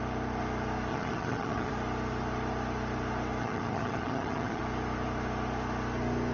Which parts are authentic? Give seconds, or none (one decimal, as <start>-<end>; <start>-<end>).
0.0-0.9; 1.7-3.4; 4.6-6.3